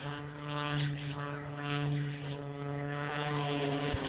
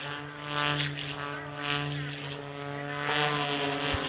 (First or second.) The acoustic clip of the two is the second